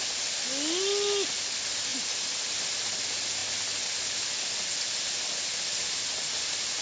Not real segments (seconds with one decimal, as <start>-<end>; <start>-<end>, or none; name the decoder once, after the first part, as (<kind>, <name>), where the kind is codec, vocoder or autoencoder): none